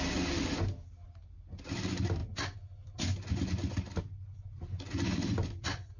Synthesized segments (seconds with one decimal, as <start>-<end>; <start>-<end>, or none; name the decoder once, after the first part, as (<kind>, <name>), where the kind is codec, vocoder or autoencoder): none